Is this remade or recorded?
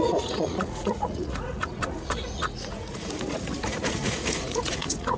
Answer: remade